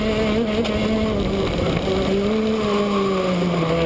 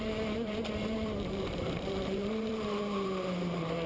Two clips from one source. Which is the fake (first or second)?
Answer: second